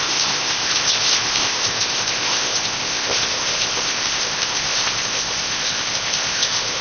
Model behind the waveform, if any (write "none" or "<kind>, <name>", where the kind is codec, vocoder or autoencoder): codec, ZipCodec